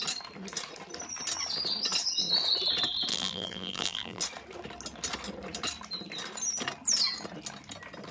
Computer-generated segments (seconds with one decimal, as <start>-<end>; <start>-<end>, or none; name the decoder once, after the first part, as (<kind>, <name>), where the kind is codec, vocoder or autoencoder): 3.1-4.2 (vocoder, BigVGAN v2)